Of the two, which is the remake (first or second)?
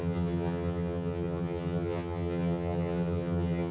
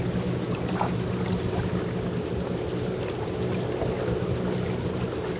first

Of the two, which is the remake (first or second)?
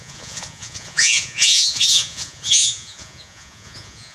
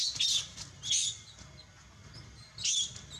first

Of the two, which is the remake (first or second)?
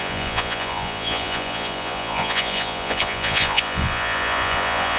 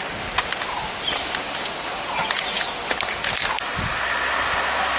first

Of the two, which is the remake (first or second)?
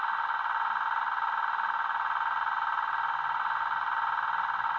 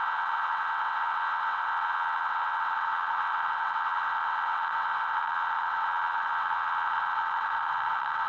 second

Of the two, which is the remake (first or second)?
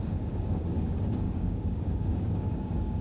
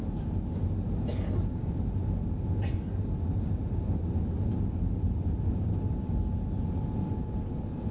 first